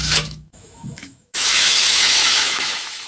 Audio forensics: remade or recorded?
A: remade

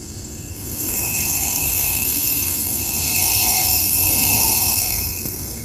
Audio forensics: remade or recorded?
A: remade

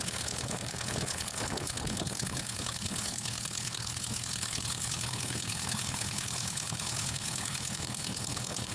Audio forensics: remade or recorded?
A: remade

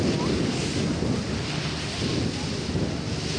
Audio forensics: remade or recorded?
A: recorded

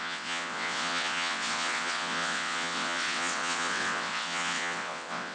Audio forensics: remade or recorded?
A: remade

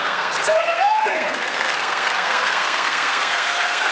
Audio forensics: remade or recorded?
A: remade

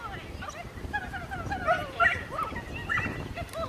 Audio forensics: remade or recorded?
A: recorded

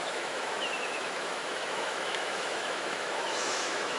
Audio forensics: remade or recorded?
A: remade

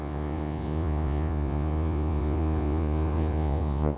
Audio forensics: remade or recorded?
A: remade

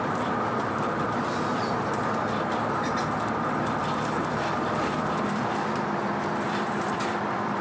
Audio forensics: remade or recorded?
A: remade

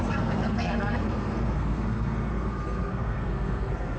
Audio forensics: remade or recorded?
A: remade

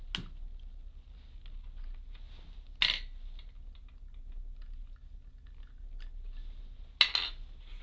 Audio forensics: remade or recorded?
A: recorded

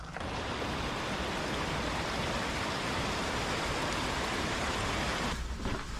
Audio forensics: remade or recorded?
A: recorded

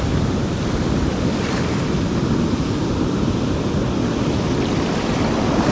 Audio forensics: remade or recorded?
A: remade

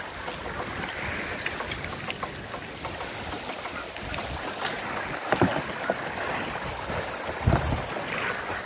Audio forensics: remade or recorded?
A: recorded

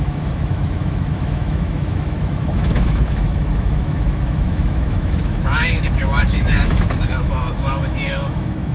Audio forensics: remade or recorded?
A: remade